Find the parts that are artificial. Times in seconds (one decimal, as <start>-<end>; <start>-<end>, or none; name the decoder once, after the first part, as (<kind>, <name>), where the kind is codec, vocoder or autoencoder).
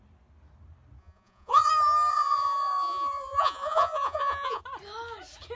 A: 1.0-1.7 (vocoder, Vocos); 2.1-4.6